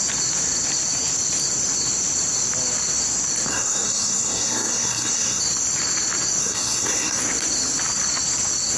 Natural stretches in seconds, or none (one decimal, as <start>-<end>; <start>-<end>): 0.0-3.5; 5.4-6.4; 7.2-8.8